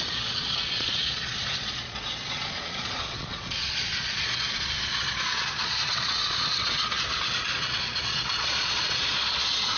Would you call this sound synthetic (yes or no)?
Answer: yes